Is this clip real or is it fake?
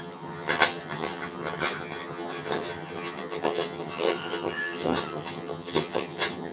fake